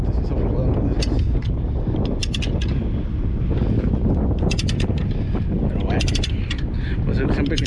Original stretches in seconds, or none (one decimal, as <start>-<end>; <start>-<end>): 0.0-7.7